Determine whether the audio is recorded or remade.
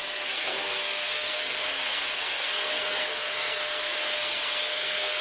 remade